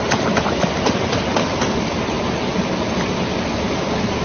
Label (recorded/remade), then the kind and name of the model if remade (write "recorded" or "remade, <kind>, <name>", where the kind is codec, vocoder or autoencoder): recorded